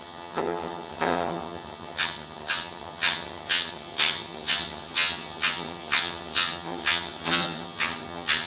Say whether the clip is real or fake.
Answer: fake